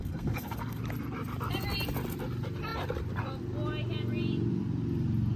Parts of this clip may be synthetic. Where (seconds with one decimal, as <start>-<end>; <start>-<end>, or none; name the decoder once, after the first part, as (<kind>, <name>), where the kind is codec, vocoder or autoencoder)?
0.0-0.8 (codec, SNAC)